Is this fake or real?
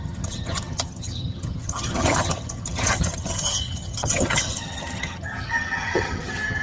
fake